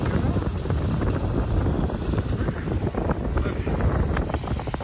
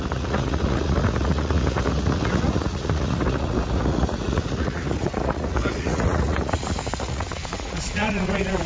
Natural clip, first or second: first